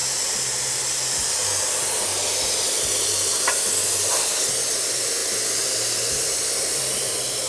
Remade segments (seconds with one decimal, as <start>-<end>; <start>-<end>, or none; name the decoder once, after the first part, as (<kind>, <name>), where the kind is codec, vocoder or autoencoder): 4.5-5.2 (vocoder, BigVGAN v2); 6.1-7.5